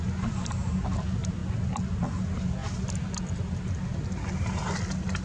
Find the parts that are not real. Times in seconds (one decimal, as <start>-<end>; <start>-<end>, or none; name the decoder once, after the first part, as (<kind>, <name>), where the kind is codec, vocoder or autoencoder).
none